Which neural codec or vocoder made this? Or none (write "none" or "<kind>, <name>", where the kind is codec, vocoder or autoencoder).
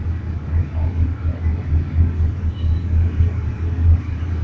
codec, DAC